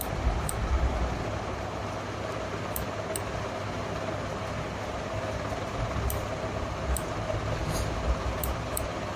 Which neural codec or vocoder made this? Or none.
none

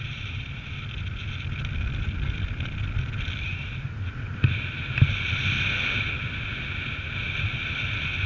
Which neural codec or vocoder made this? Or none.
none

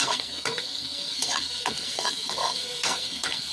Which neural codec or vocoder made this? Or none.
codec, SNAC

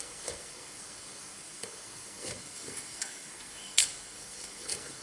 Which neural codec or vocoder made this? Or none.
codec, SNAC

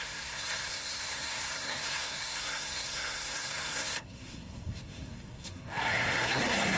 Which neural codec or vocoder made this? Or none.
codec, SNAC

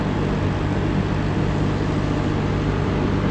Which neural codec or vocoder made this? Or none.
none